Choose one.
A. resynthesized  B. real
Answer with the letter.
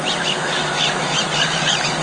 B